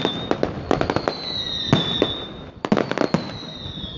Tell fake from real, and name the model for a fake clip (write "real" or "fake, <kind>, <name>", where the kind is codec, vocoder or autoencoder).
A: real